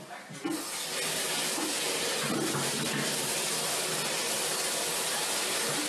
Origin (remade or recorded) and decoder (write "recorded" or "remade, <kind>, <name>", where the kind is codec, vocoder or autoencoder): recorded